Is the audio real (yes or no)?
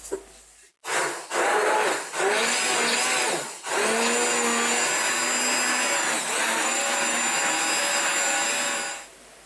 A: yes